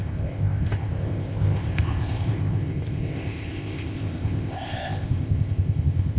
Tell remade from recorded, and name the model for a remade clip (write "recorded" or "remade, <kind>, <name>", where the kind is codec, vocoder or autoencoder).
remade, codec, ZipCodec